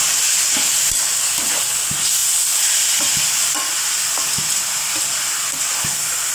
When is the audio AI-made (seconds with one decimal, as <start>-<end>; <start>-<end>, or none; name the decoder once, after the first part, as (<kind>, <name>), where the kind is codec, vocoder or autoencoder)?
none